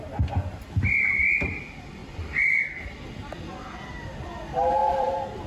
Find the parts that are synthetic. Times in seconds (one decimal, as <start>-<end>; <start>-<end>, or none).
2.0-3.4

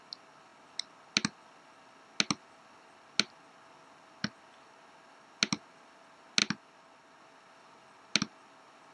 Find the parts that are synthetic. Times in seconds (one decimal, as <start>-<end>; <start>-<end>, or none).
none

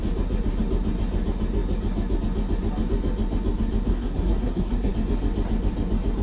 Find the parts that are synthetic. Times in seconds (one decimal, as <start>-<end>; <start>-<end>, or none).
3.9-4.9

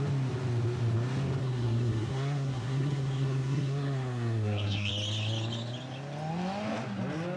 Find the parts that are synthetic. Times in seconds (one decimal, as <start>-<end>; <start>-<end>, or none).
1.4-4.9

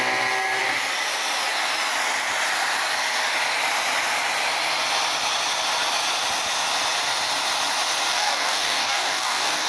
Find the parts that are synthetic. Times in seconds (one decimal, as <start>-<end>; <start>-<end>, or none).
8.1-9.7

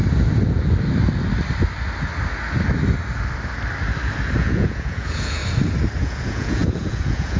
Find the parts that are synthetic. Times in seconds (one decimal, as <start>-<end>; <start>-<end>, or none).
4.4-5.4; 6.0-7.4

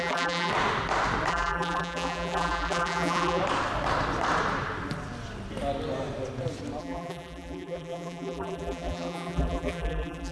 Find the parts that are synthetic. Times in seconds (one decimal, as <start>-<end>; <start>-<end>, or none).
0.0-0.5; 1.3-3.4; 6.8-10.3